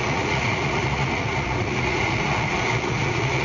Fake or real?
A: fake